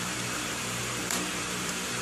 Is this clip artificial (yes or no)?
yes